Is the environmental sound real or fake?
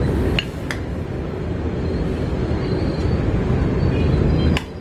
real